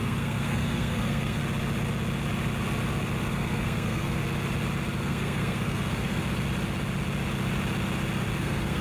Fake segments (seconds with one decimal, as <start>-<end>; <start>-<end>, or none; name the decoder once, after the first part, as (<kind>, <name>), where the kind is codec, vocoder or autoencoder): 0.0-1.4 (codec, SNAC); 3.3-4.2; 5.0-6.2; 8.4-8.8